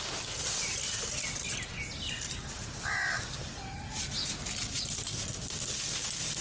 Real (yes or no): yes